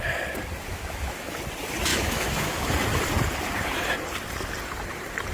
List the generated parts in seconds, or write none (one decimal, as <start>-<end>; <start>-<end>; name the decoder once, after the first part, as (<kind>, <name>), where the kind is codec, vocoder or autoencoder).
0.7-1.4 (autoencoder, DAC-VAE); 1.9-2.7